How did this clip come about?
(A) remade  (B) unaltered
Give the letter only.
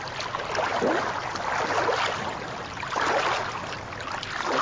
B